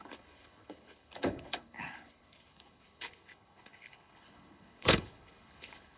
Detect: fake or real fake